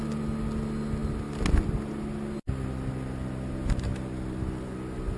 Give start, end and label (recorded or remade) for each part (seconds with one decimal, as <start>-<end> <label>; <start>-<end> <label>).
0.0-5.2 recorded